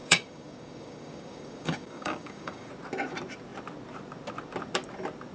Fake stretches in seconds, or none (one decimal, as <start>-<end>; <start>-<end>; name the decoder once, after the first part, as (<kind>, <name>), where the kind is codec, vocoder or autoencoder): 0.0-2.7 (codec, DAC)